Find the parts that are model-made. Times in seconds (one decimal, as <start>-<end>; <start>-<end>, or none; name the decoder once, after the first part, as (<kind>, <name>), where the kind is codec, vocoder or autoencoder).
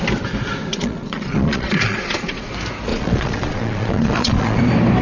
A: 0.7-2.5 (vocoder, Vocos); 2.9-4.6